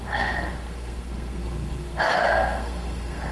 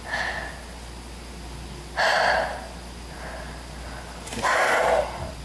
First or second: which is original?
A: second